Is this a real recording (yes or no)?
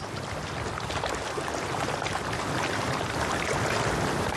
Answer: yes